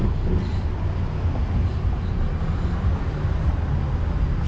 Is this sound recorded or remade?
recorded